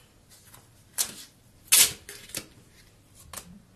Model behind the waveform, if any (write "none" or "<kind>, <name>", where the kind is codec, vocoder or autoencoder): none